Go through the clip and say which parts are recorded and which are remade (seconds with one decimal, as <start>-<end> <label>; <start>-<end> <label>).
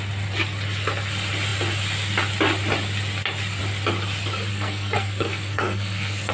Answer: 0.0-4.5 recorded; 4.5-6.3 remade